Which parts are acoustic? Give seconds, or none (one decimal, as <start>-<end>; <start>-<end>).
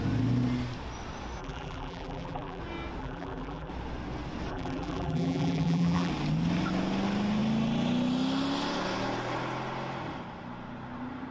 0.0-1.4; 2.6-3.0; 3.7-4.5; 6.1-11.3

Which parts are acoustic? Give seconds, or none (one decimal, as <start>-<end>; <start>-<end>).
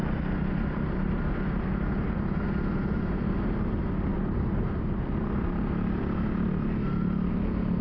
0.0-7.8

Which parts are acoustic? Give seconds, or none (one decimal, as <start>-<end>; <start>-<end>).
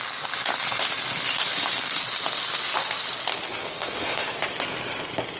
0.0-1.5; 2.0-3.6; 4.4-5.4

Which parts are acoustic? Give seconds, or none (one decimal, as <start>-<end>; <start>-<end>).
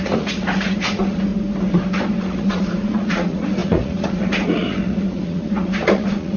1.3-2.2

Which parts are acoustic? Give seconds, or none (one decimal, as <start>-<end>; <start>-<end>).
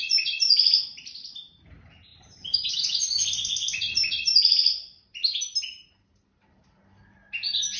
0.0-2.1; 2.7-7.8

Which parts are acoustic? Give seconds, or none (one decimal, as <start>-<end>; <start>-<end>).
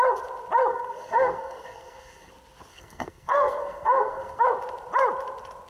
0.0-0.7; 2.3-2.7; 4.4-5.7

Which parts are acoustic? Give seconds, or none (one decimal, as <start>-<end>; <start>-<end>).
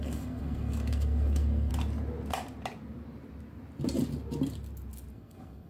1.7-5.1